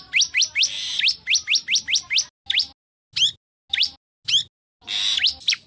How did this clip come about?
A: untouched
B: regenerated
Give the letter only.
A